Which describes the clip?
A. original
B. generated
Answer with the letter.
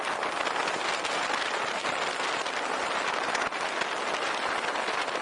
A